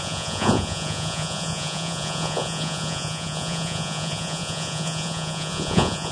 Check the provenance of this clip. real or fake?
fake